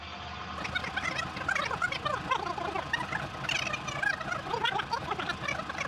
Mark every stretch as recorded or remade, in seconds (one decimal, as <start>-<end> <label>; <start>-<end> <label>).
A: 0.0-5.9 recorded

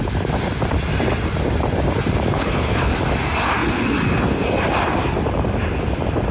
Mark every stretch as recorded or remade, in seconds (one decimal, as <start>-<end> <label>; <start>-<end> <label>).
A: 0.0-2.3 recorded; 2.3-2.9 remade; 2.9-6.3 recorded